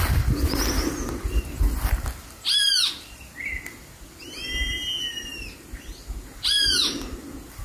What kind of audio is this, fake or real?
fake